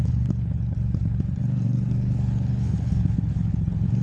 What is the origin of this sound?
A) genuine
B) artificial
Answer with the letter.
B